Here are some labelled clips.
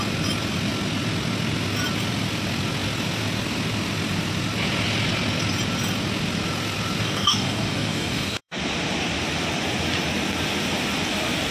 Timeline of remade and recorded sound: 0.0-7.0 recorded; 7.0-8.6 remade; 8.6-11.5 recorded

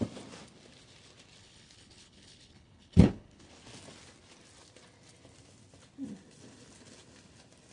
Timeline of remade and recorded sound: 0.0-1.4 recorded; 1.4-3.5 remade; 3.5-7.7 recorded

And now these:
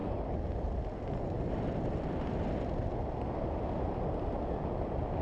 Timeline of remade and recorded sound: 0.0-5.2 recorded